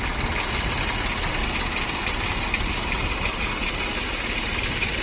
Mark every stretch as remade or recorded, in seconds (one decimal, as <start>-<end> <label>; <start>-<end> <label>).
0.0-5.0 recorded